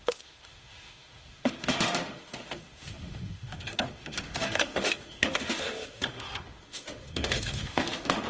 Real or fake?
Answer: fake